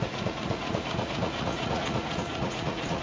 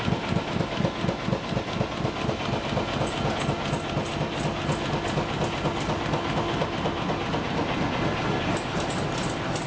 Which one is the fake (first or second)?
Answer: first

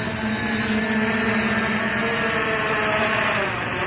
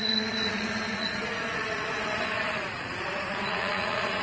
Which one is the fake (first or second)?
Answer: second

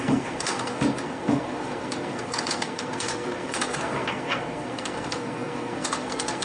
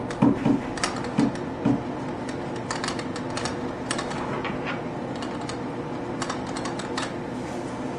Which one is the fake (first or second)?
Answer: first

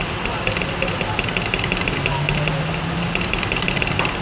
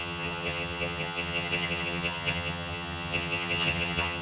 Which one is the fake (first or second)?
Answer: second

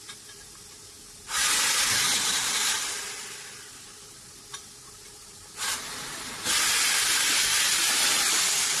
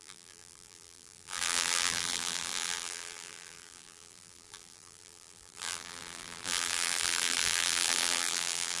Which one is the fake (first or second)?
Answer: second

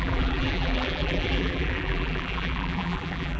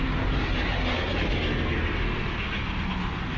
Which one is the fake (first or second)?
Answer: first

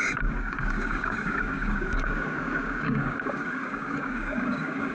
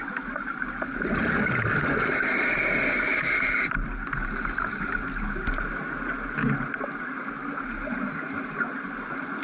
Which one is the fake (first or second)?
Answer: first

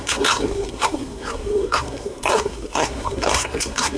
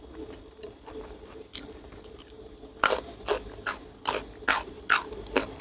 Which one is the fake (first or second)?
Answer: first